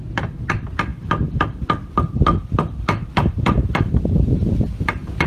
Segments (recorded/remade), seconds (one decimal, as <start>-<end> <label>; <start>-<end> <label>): 0.0-0.9 recorded; 0.9-4.1 remade; 4.1-5.3 recorded